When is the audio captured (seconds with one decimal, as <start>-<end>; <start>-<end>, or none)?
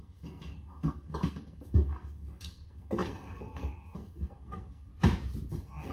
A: 4.9-5.5